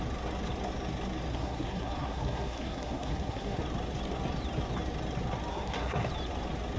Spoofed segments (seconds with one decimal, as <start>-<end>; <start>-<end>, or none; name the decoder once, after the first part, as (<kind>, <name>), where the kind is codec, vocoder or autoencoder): 1.3-3.6 (codec, SNAC); 5.5-6.1